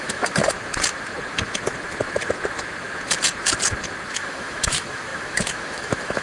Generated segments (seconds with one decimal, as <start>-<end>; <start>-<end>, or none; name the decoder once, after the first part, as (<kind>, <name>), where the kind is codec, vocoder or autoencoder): 0.0-0.4 (autoencoder, DAC-VAE); 4.1-6.2